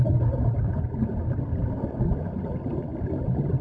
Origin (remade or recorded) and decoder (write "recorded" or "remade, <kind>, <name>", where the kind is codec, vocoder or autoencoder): recorded